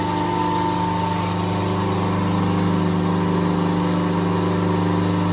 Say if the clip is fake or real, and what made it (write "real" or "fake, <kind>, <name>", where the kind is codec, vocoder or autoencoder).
real